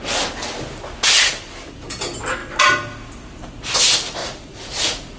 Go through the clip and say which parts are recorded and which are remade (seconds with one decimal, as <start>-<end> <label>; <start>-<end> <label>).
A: 0.0-4.2 recorded; 4.2-5.2 remade

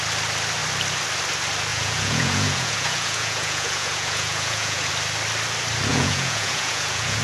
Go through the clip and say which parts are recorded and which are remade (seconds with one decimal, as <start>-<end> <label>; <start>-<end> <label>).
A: 0.0-1.7 recorded; 1.7-4.9 remade; 4.9-5.9 recorded; 5.9-7.2 remade

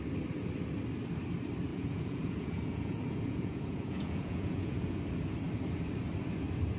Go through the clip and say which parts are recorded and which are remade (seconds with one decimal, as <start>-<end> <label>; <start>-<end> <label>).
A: 0.0-1.7 recorded; 1.7-5.0 remade; 5.0-6.8 recorded

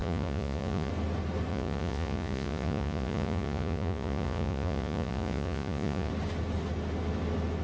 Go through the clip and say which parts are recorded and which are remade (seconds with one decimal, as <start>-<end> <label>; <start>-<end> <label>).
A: 0.0-0.9 remade; 0.9-1.5 recorded; 1.5-6.1 remade; 6.1-7.6 recorded

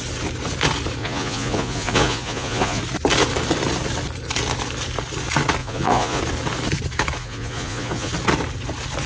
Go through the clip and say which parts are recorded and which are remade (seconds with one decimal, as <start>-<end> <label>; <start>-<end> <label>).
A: 0.0-1.0 recorded; 1.0-2.8 remade; 2.8-5.6 recorded; 5.6-6.2 remade; 6.2-7.2 recorded; 7.2-8.1 remade; 8.1-9.1 recorded